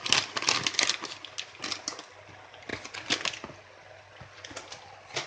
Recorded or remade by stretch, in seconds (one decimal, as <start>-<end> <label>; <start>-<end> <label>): 0.0-5.3 recorded

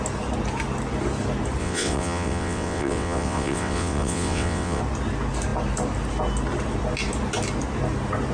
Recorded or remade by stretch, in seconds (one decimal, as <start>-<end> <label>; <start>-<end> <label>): 0.0-1.6 recorded; 1.6-4.8 remade; 4.8-8.3 recorded

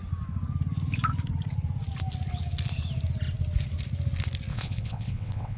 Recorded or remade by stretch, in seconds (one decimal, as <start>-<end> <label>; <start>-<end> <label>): 0.0-4.5 recorded; 4.5-5.6 remade